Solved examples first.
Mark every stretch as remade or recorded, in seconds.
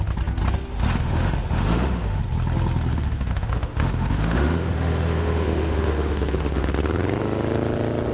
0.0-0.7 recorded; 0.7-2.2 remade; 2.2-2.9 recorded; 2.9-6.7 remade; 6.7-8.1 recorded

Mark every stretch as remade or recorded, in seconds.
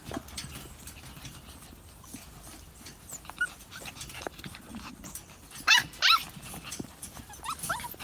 0.0-8.0 recorded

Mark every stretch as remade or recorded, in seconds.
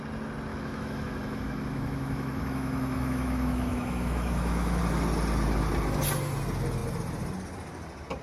0.0-0.5 recorded; 0.5-4.8 remade; 4.8-8.2 recorded